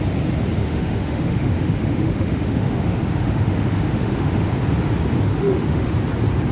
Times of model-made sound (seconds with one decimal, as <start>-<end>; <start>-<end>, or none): 0.6-4.5; 5.3-5.9